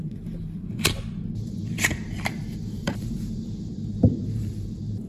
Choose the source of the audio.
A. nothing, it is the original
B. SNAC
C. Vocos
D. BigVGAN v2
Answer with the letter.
D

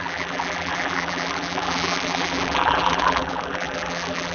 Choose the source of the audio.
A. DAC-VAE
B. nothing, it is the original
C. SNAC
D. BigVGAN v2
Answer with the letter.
D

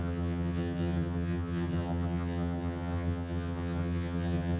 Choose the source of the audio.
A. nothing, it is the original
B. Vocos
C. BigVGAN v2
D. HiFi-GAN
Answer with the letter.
D